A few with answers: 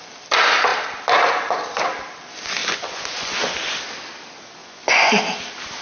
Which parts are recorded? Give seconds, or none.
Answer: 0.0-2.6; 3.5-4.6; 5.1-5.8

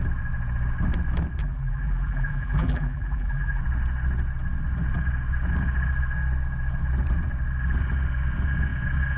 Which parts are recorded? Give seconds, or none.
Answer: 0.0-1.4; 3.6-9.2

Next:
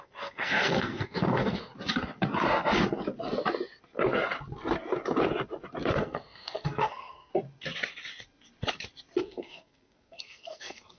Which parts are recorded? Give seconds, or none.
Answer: 1.7-5.9; 7.3-9.2

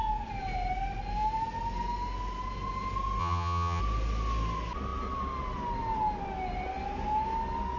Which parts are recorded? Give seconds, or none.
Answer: 0.0-3.2; 3.8-7.8

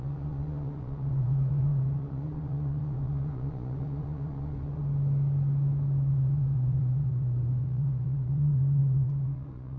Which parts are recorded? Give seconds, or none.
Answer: 4.8-6.1

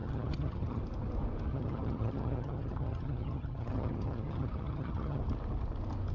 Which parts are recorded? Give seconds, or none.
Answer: 0.8-1.5; 5.2-6.1

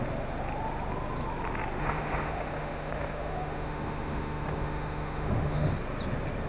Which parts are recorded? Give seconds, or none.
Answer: 0.0-1.8; 5.7-6.5

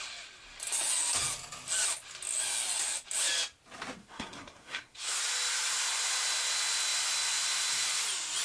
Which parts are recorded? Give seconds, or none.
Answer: 0.0-4.0; 5.2-8.4